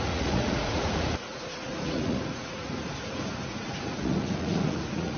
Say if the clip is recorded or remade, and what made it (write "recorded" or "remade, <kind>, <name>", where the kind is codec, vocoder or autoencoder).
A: remade, vocoder, Vocos